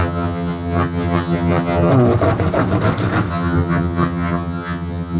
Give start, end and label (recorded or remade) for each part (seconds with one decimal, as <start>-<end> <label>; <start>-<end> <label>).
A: 0.0-1.9 remade; 1.9-3.3 recorded; 3.3-5.2 remade